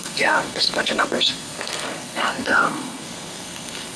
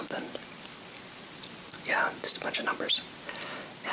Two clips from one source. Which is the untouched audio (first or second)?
second